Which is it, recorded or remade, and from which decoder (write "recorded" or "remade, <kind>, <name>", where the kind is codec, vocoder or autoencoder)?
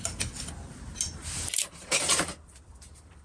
recorded